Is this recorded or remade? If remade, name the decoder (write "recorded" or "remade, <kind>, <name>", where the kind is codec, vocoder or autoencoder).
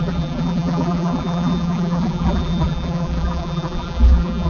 remade, vocoder, BigVGAN v2